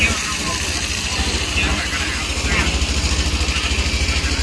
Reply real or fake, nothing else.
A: real